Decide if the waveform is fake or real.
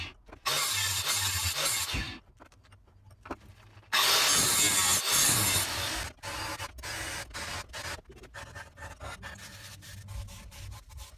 real